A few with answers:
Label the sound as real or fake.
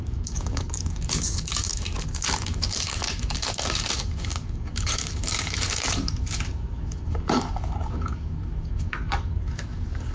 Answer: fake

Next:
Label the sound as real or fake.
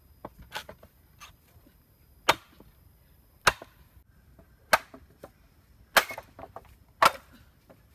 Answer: real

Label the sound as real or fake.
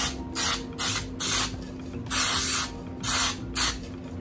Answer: real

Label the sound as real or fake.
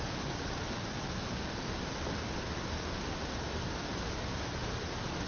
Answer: real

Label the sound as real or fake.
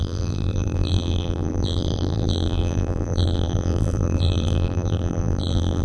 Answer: fake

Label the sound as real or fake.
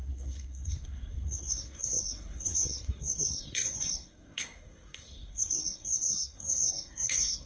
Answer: fake